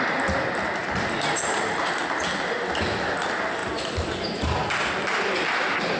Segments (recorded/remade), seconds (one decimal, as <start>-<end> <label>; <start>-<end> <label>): 0.0-0.8 recorded; 0.8-2.0 remade; 2.0-3.6 recorded; 3.6-4.9 remade; 4.9-6.0 recorded